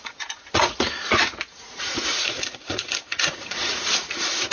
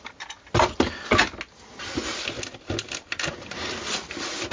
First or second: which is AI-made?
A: first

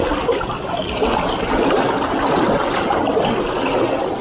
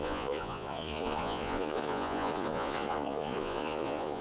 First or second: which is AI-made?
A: second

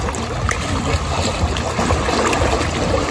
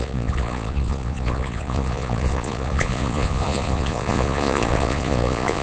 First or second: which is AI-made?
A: second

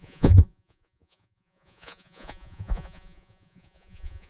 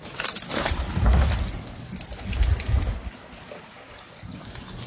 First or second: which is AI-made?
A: first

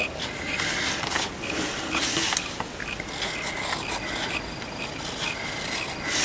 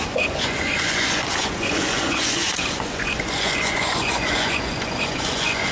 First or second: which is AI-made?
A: second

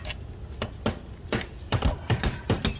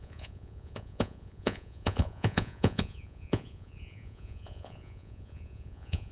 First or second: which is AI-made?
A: second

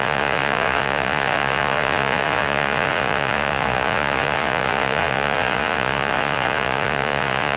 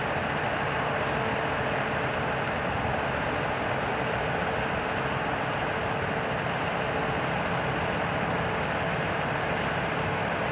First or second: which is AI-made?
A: first